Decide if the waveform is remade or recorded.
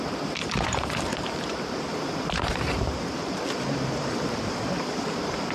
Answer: remade